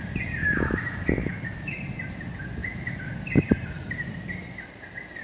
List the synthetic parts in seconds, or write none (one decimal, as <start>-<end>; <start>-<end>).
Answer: 0.4-1.8; 2.6-3.2